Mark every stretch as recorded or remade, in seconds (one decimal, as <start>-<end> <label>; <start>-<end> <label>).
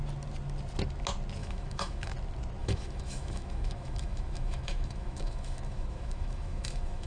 0.0-1.4 recorded; 1.4-2.1 remade; 2.1-2.6 recorded; 2.6-7.1 remade